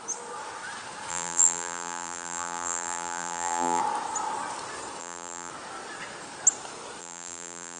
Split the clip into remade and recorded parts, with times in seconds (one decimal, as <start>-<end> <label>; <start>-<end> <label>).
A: 0.0-1.1 recorded; 1.1-3.8 remade; 3.8-5.0 recorded; 5.0-5.5 remade; 5.5-7.0 recorded; 7.0-7.8 remade